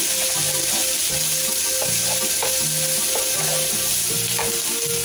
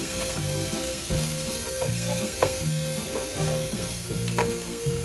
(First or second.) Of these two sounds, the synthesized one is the second